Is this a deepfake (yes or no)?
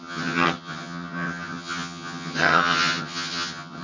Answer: yes